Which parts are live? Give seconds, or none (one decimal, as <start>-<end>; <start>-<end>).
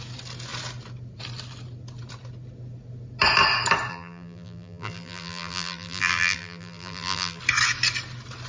0.0-3.9; 7.4-8.5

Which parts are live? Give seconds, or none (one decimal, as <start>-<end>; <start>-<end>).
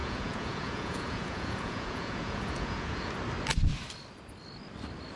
3.1-5.2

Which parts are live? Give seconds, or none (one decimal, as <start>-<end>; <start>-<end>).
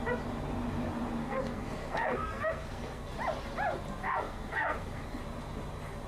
0.0-1.2; 3.2-4.0; 5.2-6.1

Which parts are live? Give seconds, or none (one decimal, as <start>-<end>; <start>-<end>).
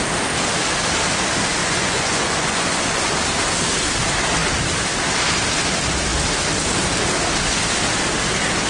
0.0-1.6; 3.1-8.7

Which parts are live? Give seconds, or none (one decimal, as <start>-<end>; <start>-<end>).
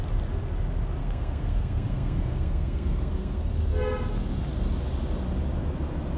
0.0-1.0; 3.5-6.2